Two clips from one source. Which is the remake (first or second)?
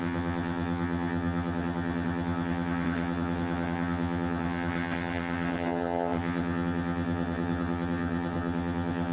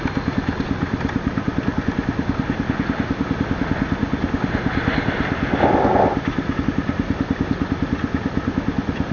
first